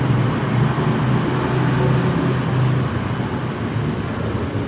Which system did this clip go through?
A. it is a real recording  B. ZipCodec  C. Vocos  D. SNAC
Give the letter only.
A